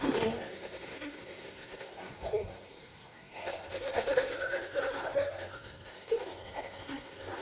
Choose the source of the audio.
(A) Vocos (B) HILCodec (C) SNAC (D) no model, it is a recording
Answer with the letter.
C